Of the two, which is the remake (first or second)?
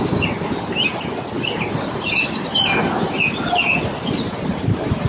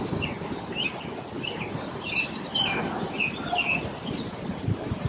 second